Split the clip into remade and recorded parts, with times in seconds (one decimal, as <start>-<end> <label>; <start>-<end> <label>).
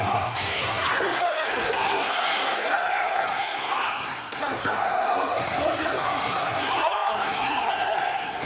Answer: 0.0-8.5 remade